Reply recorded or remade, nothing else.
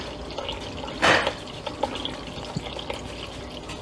recorded